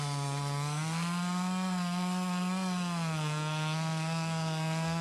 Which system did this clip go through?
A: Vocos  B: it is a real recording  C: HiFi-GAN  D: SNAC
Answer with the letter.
D